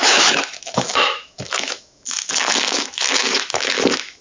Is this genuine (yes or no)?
no